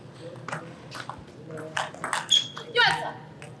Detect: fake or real real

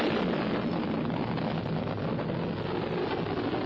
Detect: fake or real real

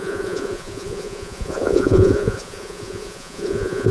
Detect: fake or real fake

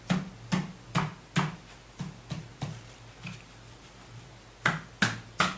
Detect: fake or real real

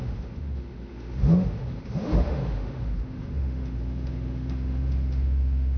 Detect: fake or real fake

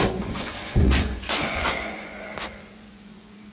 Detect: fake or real fake